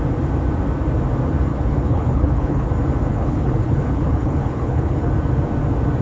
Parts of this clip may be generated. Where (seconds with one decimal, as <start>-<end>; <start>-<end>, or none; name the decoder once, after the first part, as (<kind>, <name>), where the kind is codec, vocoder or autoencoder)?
1.5-2.7 (codec, HILCodec); 3.1-5.1